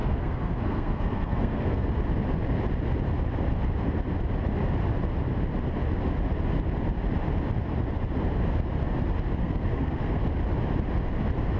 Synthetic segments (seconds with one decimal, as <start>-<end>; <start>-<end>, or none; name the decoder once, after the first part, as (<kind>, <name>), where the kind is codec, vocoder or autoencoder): 0.0-1.9 (codec, SNAC); 9.4-10.2